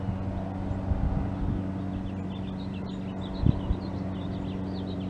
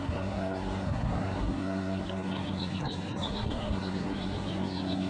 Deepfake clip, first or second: second